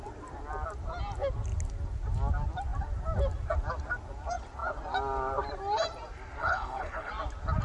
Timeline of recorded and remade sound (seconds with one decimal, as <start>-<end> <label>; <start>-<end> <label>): 0.0-6.4 recorded; 6.4-7.1 remade; 7.1-7.6 recorded